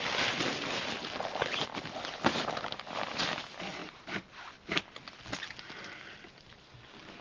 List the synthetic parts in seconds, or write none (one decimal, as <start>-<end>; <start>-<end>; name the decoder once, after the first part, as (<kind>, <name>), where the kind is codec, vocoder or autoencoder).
none